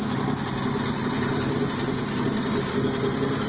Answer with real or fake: real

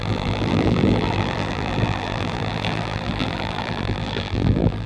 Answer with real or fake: fake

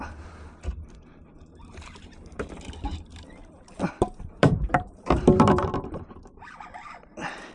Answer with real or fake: fake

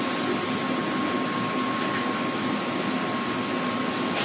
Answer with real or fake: real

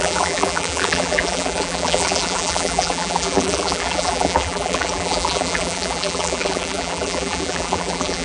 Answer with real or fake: fake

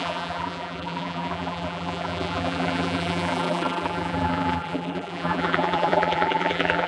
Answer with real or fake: fake